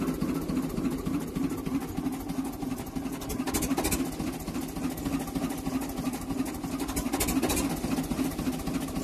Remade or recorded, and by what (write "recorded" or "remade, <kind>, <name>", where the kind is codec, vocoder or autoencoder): recorded